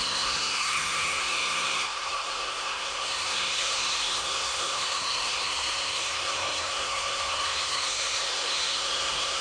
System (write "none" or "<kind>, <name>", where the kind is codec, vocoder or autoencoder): codec, SNAC